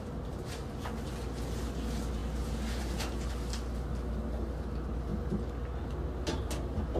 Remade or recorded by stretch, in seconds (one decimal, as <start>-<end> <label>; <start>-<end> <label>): 0.0-7.0 recorded